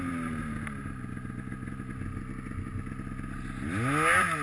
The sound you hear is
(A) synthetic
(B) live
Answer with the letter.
B